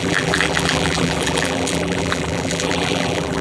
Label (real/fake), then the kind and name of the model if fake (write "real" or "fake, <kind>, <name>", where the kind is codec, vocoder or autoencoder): fake, vocoder, BigVGAN v2